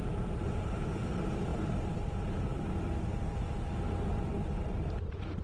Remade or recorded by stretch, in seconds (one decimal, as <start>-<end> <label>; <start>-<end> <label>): 0.0-5.4 recorded